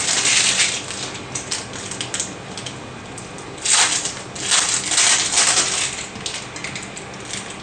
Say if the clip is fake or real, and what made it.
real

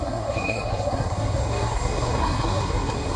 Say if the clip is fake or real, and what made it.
fake, codec, SNAC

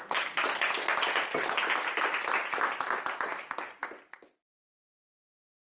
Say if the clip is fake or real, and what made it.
real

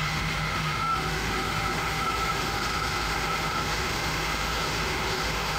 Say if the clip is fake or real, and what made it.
fake, autoencoder, DAC-VAE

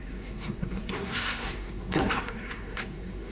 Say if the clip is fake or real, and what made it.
fake, codec, SNAC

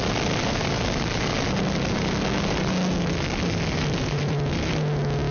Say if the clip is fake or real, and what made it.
real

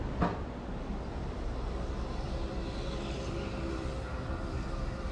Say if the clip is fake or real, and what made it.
real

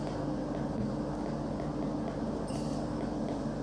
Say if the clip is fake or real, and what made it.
real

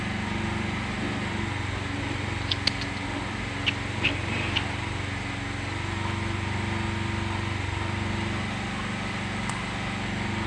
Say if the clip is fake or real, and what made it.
real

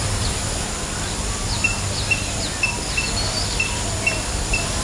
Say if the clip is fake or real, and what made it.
real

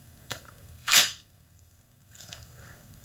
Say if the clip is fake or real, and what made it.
fake, codec, SNAC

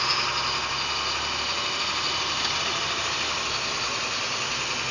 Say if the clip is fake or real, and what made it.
real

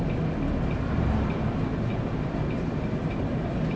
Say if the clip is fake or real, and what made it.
real